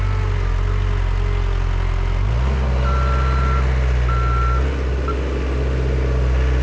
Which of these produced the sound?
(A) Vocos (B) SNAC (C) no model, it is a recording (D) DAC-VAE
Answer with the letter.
C